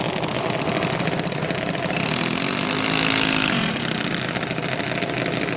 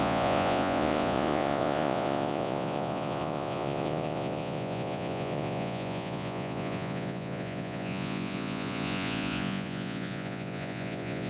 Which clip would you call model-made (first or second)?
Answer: second